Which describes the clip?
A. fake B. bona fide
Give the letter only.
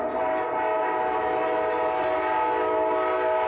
B